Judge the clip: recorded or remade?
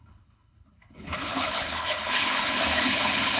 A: remade